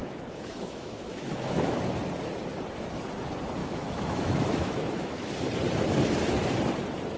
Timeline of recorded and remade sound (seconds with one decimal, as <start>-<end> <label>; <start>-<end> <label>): 0.0-1.8 remade; 1.8-3.6 recorded; 3.6-5.3 remade; 5.3-7.2 recorded

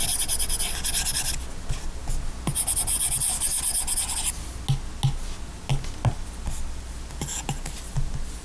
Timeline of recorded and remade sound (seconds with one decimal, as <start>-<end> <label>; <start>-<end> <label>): 0.0-8.4 recorded

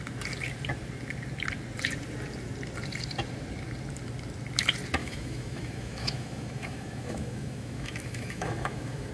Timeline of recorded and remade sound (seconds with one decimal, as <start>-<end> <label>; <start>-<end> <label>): 0.0-5.0 recorded; 5.0-9.1 remade

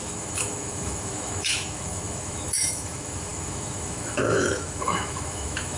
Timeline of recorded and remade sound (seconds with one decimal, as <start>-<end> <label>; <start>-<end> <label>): 0.0-5.8 remade

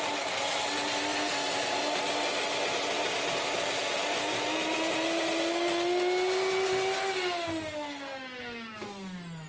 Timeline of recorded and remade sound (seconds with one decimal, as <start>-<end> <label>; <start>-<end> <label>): 0.0-9.5 recorded

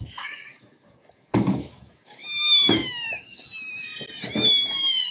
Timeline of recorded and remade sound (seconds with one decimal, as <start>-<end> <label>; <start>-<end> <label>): 0.0-3.9 remade; 3.9-5.1 recorded